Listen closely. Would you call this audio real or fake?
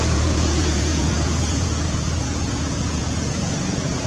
fake